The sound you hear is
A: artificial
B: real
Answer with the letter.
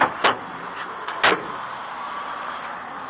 B